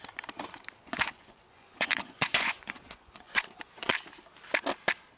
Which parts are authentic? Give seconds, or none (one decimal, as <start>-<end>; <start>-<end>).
0.0-0.8; 3.9-5.2